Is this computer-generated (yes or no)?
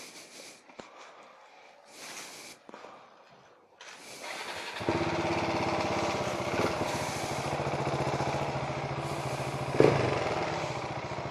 no